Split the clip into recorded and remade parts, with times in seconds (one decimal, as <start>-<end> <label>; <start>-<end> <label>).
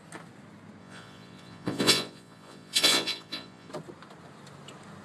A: 0.0-0.8 recorded; 0.8-3.7 remade; 3.7-5.0 recorded